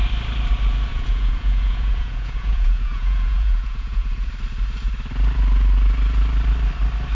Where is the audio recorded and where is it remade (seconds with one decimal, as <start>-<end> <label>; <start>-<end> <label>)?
0.0-0.9 recorded; 0.9-4.3 remade; 4.3-7.1 recorded